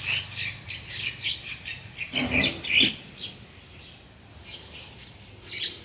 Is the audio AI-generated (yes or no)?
no